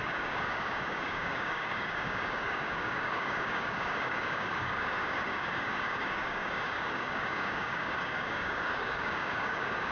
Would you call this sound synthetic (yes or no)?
yes